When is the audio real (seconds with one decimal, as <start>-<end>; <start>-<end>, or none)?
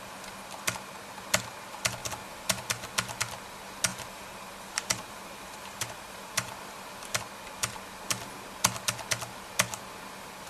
0.0-2.0; 2.6-3.9; 7.2-10.5